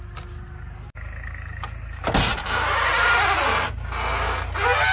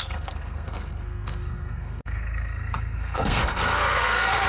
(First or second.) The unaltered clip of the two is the first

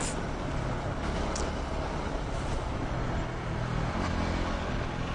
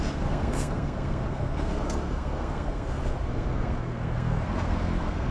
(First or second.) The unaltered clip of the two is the first